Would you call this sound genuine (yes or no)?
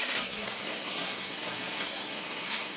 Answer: no